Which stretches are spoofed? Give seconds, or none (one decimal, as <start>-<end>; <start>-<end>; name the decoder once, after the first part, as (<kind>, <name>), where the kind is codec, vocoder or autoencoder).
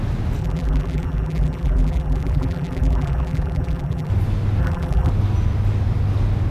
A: 0.4-4.1 (vocoder, BigVGAN v2); 4.6-5.1